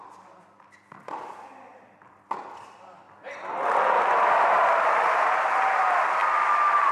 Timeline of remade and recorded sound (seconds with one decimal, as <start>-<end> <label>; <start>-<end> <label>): 0.0-6.9 recorded